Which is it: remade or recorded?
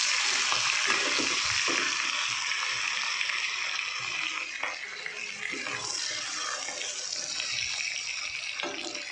recorded